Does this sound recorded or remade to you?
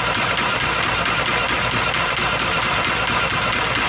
recorded